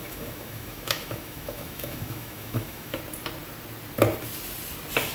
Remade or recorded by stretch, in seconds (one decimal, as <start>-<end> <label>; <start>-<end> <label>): 0.0-3.0 remade; 3.0-5.1 recorded